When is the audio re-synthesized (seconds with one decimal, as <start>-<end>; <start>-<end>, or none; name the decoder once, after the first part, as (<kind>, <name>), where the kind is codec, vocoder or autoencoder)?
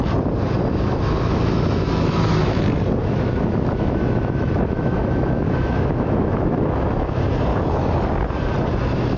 0.7-2.6 (autoencoder, DAC-VAE); 3.0-7.2